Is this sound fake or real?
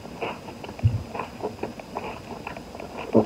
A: real